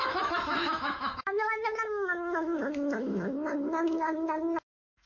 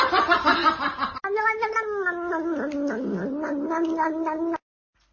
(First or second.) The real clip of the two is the second